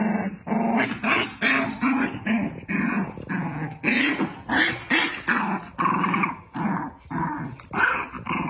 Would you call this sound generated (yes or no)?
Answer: no